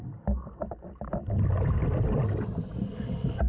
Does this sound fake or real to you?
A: real